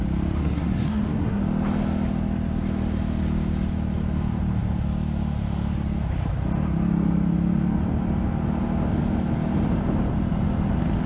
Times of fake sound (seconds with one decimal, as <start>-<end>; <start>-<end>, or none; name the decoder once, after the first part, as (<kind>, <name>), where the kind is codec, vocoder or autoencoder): 0.4-1.4 (codec, SNAC)